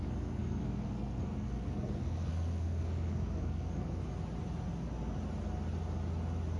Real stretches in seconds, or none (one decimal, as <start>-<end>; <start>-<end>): 4.0-6.6